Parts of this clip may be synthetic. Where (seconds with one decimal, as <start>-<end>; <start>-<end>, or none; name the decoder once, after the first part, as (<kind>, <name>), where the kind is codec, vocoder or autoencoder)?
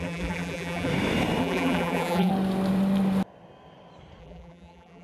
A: 0.0-0.9 (vocoder, BigVGAN v2); 1.4-2.3; 4.2-5.0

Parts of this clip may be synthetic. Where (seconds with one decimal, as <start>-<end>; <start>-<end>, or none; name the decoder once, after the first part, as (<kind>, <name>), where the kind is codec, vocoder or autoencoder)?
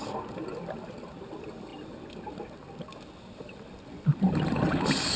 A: none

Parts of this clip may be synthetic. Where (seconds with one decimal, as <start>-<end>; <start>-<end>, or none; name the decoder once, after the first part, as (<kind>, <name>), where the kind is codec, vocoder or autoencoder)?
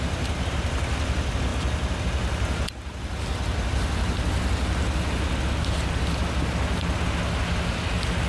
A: 1.5-2.0 (vocoder, BigVGAN v2)